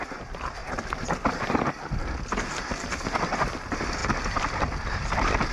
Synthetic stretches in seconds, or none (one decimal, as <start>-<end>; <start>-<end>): none